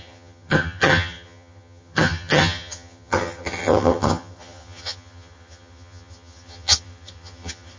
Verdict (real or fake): fake